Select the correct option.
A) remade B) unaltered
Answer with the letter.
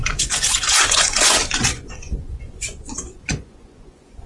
A